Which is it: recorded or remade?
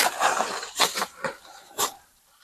remade